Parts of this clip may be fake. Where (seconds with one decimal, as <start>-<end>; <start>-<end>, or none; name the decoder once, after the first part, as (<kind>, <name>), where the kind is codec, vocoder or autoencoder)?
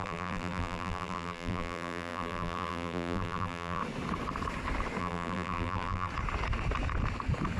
0.0-3.8 (vocoder, BigVGAN v2); 5.0-6.1